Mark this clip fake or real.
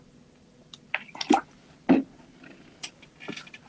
real